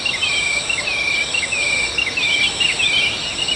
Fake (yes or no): no